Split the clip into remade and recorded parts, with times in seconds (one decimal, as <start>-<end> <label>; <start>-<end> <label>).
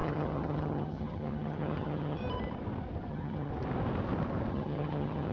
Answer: 0.0-2.2 remade; 2.2-3.1 recorded; 3.1-3.5 remade; 3.5-4.5 recorded; 4.5-5.3 remade